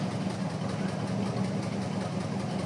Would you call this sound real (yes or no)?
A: yes